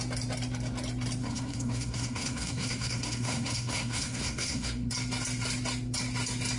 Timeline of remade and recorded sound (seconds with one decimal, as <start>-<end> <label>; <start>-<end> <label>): 0.0-1.2 recorded; 1.2-4.9 remade; 4.9-6.6 recorded